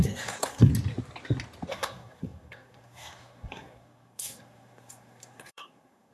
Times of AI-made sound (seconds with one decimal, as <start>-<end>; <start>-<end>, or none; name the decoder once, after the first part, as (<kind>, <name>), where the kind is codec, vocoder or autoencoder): 0.0-0.7 (codec, SNAC); 1.7-6.1